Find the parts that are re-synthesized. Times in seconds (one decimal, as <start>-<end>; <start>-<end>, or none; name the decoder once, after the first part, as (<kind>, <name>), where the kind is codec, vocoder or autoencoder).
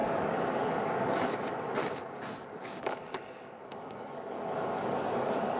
0.0-1.3 (codec, DAC); 1.8-5.6